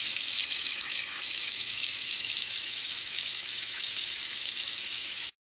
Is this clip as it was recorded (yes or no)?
no